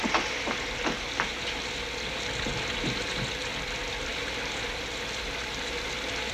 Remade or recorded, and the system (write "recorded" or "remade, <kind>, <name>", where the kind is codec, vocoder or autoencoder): recorded